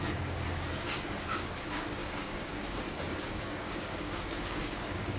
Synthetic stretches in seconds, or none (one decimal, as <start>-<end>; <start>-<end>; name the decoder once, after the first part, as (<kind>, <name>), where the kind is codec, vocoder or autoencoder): 0.0-5.2 (codec, DAC)